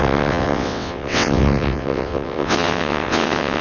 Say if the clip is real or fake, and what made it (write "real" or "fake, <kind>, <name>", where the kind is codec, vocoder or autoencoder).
fake, vocoder, WaveNeXt